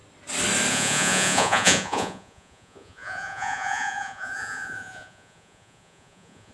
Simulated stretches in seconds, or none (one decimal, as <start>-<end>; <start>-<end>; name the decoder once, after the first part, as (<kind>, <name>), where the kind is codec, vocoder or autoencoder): 0.7-6.5 (vocoder, Vocos)